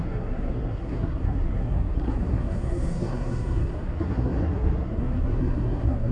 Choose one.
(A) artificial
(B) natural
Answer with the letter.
A